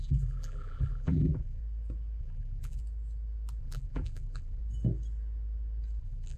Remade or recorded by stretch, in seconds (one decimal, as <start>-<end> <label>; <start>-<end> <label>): 0.0-1.6 remade; 1.6-2.2 recorded; 2.2-2.8 remade; 2.8-3.6 recorded; 3.6-4.6 remade; 4.6-6.0 recorded; 6.0-6.4 remade